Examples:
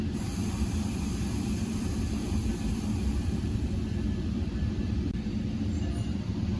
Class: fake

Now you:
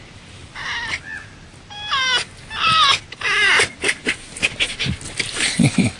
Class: real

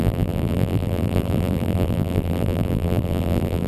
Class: fake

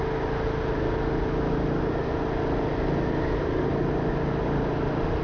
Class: real